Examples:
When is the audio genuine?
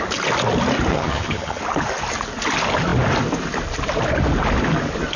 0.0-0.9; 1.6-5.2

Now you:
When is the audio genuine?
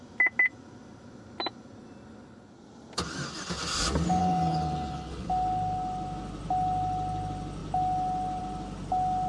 0.0-4.2; 5.3-9.3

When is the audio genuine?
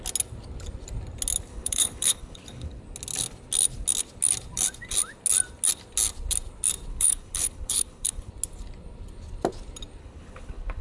0.0-1.5; 2.8-6.9; 8.3-10.0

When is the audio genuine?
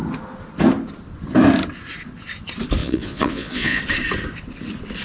0.0-2.8; 3.8-5.0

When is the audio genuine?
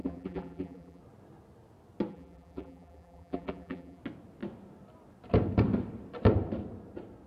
1.0-2.1; 4.0-7.3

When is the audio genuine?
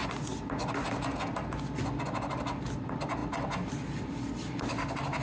0.0-5.2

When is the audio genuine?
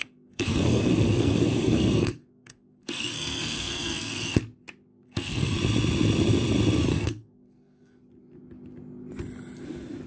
4.4-4.9; 5.5-6.9; 8.0-10.1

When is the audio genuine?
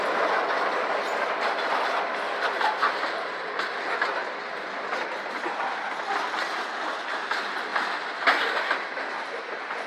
0.0-9.9